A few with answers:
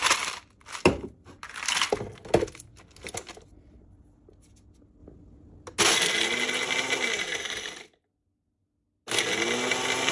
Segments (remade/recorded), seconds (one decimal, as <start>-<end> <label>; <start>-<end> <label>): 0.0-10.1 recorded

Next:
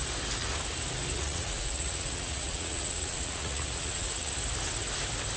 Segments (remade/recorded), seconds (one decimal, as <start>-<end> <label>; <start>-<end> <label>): 0.0-1.1 recorded; 1.1-4.3 remade; 4.3-5.4 recorded

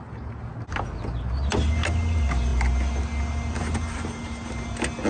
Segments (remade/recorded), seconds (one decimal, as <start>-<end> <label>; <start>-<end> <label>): 0.0-5.1 recorded

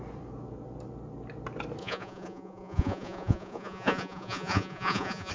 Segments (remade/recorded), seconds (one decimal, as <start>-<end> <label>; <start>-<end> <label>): 0.0-1.8 recorded; 1.8-5.3 remade